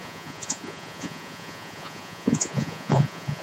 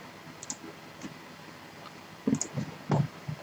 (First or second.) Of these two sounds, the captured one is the second